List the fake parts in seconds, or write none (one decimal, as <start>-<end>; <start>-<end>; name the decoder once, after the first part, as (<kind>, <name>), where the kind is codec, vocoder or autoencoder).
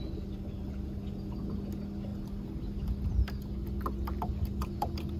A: none